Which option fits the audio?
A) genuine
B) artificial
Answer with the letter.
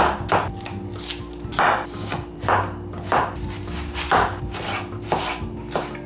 A